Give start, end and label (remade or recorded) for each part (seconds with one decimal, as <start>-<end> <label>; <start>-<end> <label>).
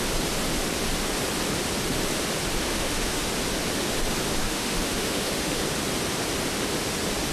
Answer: 0.0-2.7 recorded; 2.7-3.3 remade; 3.3-4.4 recorded; 4.4-5.6 remade; 5.6-7.3 recorded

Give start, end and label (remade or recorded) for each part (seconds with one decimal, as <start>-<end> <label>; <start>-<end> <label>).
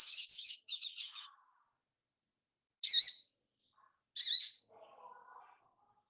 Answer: 0.0-1.9 remade; 1.9-5.6 recorded; 5.6-6.1 remade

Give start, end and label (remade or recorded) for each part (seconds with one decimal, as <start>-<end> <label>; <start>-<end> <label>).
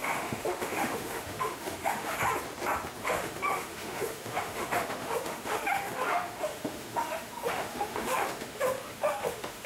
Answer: 0.0-2.2 remade; 2.2-3.0 recorded; 3.0-9.7 remade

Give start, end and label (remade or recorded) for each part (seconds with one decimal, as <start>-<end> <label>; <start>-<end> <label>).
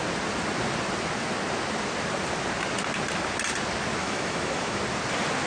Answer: 0.0-4.0 recorded; 4.0-4.8 remade; 4.8-5.5 recorded